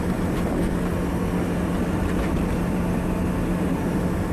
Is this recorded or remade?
recorded